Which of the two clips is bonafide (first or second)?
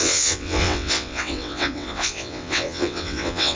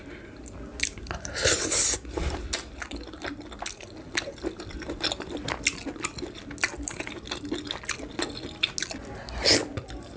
second